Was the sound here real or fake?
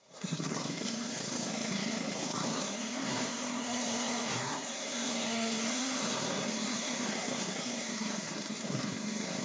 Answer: fake